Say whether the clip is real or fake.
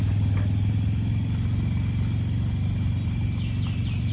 real